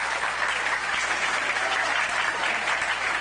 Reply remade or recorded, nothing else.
remade